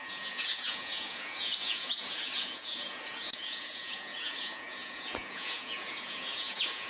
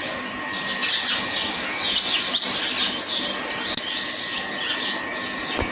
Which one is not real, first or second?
first